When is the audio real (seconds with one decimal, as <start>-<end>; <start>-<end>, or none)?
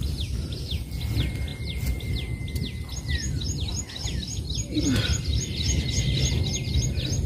0.0-1.5; 2.9-7.3